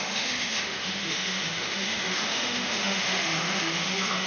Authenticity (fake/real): fake